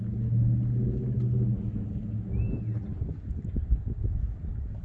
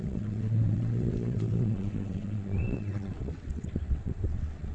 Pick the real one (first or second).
first